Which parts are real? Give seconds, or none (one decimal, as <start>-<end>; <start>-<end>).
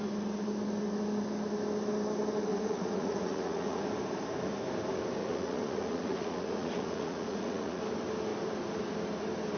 0.0-2.5; 3.8-5.2; 7.8-9.6